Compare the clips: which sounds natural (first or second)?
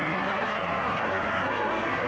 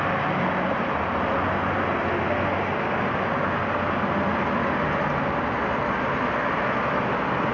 second